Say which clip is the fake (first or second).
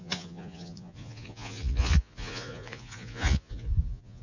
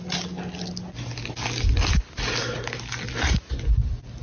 first